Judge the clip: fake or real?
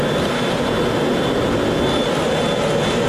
real